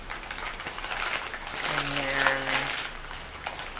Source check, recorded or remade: recorded